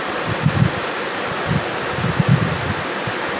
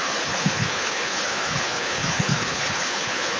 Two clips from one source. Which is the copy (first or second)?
second